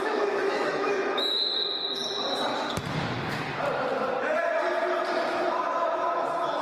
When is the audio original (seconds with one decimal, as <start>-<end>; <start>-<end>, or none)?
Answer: 1.5-5.5